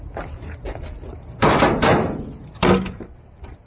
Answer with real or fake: real